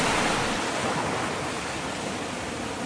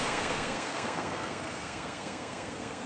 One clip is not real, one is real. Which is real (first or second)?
first